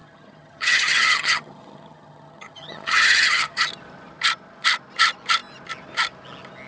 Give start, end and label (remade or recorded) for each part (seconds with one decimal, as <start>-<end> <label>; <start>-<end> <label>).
0.0-3.6 remade; 3.6-6.7 recorded